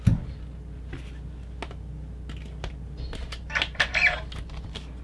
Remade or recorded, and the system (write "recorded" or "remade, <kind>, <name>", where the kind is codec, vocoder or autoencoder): recorded